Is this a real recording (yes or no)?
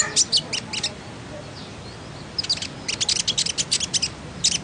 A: yes